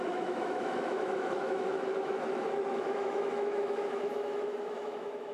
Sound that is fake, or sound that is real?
fake